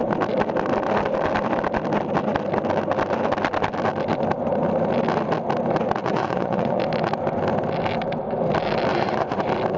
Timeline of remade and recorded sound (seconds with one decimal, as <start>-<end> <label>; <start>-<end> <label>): 0.0-6.0 recorded; 6.0-6.8 remade; 6.8-8.9 recorded; 8.9-9.4 remade; 9.4-9.8 recorded